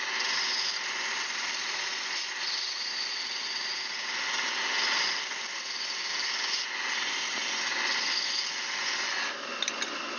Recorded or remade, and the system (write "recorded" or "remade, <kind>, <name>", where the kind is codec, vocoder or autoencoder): recorded